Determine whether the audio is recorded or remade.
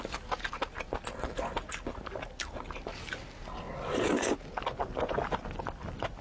recorded